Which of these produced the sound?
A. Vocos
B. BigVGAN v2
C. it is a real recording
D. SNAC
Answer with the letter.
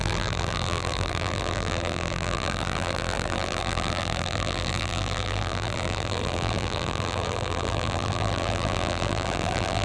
B